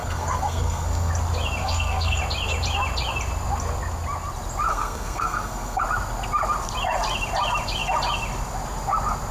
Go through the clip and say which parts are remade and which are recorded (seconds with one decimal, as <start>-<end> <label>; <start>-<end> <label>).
0.0-1.1 remade; 1.1-1.6 recorded; 1.6-2.2 remade; 2.2-4.7 recorded; 4.7-5.8 remade; 5.8-9.3 recorded